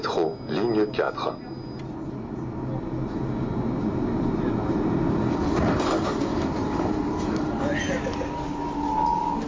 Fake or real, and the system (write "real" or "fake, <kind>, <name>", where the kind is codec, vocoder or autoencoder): real